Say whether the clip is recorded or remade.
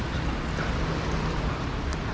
recorded